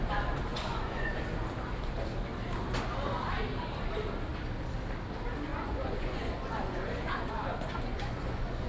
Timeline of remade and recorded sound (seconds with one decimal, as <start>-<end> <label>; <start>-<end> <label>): 0.0-0.5 recorded; 0.5-1.2 remade; 1.2-5.5 recorded; 5.5-8.7 remade